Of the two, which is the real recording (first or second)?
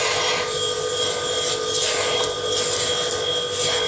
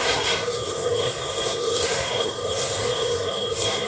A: first